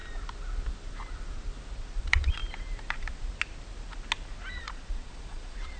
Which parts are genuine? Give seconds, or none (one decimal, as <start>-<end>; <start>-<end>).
0.0-2.0; 2.4-4.5